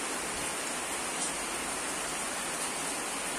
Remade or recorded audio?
recorded